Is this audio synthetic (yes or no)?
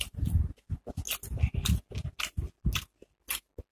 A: no